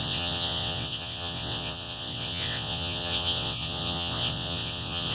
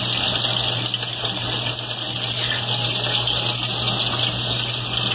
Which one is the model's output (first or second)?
first